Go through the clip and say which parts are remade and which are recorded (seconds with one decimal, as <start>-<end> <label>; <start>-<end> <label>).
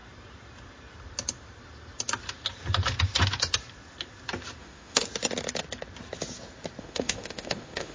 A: 0.0-4.6 recorded; 4.6-5.0 remade; 5.0-6.8 recorded; 6.8-7.9 remade